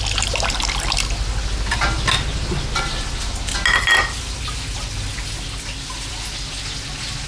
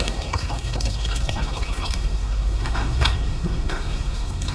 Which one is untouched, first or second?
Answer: first